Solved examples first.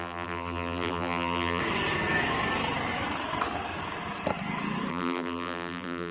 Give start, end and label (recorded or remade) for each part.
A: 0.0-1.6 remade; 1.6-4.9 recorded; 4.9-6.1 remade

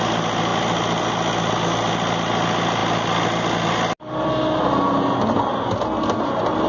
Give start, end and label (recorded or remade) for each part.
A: 0.0-6.7 recorded

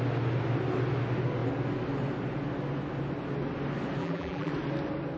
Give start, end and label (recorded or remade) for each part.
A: 0.0-4.0 recorded; 4.0-4.5 remade; 4.5-5.2 recorded